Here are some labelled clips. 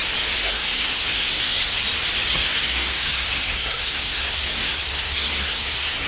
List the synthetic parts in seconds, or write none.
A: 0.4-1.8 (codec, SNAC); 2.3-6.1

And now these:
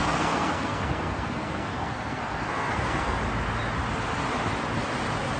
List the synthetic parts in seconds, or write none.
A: 0.0-3.2 (codec, SNAC)